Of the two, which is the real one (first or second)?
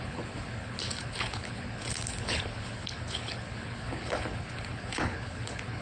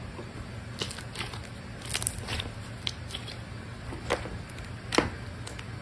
second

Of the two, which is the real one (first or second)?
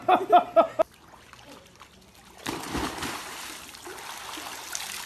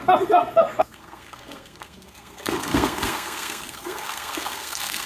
first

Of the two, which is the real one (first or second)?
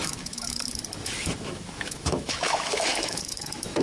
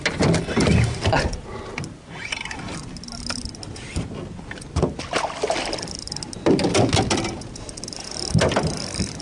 second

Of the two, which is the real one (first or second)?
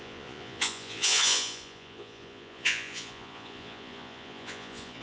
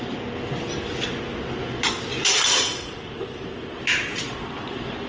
second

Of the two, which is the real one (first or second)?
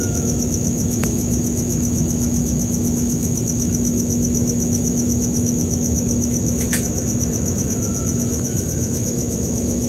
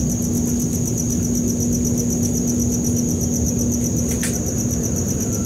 second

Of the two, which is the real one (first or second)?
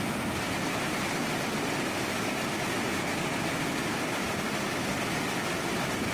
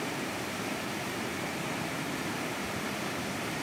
first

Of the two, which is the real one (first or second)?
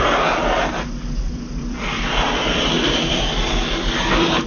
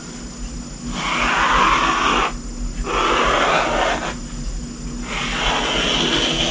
second